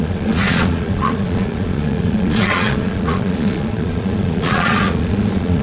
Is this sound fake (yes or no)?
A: yes